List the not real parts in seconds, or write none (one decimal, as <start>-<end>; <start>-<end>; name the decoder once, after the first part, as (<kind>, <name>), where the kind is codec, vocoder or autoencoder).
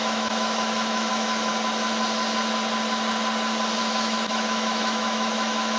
0.0-1.5 (autoencoder, DAC-VAE); 3.8-5.8